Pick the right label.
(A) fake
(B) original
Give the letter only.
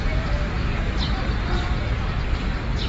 B